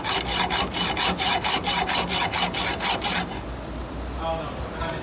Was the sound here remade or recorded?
recorded